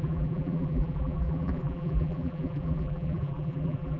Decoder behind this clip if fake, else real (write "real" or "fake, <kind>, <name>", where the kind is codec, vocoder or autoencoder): fake, vocoder, BigVGAN v2